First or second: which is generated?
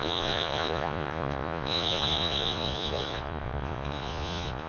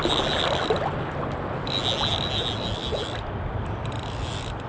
first